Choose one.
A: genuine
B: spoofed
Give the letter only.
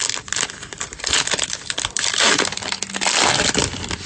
A